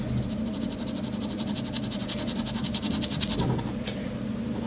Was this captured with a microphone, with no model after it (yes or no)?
yes